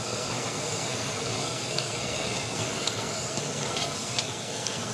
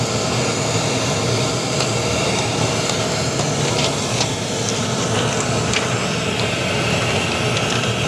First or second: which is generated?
first